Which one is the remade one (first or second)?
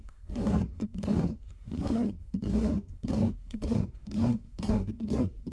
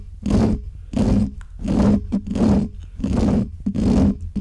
first